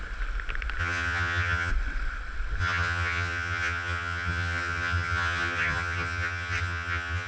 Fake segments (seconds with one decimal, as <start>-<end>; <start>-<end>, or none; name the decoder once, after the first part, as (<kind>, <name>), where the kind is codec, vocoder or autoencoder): 0.8-1.7 (vocoder, HiFi-GAN); 2.6-7.3